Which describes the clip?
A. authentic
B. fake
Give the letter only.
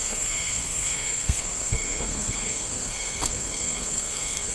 B